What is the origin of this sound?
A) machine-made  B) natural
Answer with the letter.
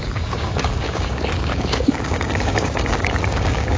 A